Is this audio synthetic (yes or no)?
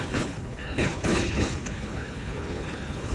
yes